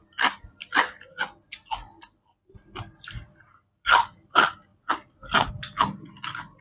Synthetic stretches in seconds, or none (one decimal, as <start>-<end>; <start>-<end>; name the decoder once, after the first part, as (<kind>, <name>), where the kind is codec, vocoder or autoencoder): none